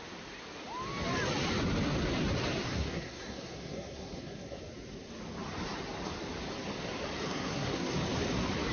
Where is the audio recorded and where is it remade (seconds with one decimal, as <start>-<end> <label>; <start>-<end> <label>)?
0.0-2.7 recorded; 2.7-4.6 remade; 4.6-7.3 recorded; 7.3-7.9 remade; 7.9-8.7 recorded